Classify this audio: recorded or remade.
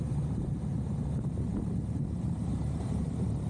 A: remade